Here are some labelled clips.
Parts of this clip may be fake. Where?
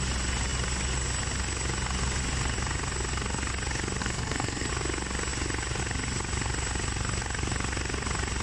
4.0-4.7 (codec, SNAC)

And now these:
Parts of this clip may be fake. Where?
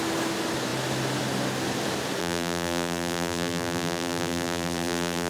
2.2-5.3 (vocoder, BigVGAN v2)